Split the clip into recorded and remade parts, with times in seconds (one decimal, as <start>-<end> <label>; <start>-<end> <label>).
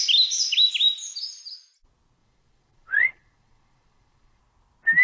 0.0-2.2 recorded; 2.2-4.4 remade; 4.4-5.0 recorded